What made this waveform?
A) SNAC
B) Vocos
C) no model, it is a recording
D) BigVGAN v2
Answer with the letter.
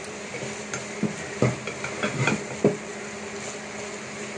C